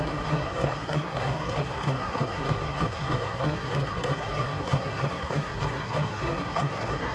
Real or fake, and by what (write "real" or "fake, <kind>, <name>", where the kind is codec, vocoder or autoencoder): fake, codec, SNAC